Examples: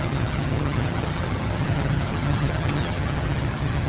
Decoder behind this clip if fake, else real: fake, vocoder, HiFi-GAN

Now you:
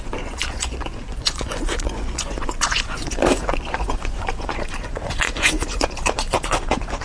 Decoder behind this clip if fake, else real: fake, vocoder, Vocos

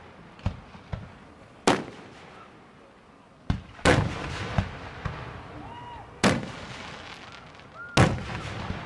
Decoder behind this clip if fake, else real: real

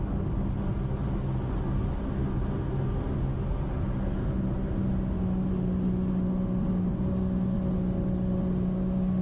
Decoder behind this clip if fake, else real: real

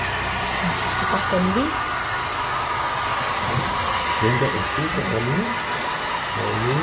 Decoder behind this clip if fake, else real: real